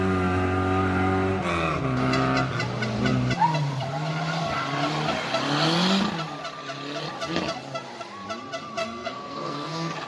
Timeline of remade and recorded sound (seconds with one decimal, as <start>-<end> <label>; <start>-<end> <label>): 0.0-8.8 recorded; 8.8-10.1 remade